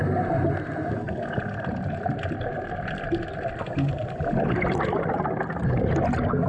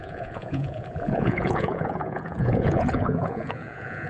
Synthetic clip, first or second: second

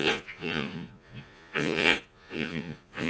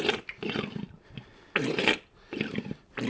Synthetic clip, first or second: first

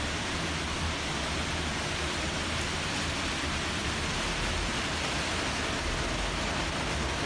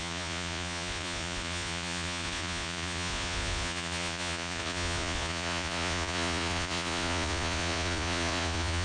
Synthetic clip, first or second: second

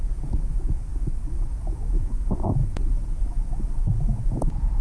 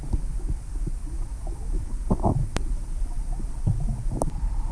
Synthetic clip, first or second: first